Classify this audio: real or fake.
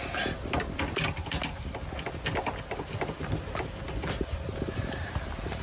real